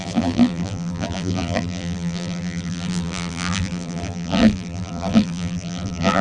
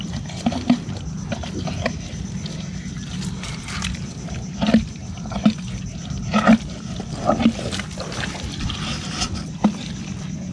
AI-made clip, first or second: first